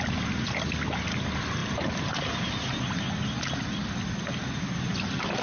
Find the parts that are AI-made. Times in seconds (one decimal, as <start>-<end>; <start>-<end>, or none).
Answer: none